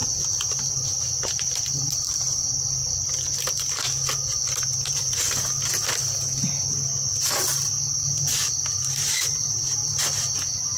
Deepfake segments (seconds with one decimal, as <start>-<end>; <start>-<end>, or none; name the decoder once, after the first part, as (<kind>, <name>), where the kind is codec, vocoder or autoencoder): none